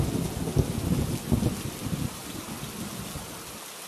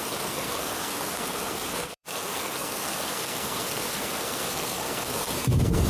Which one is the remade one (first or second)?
second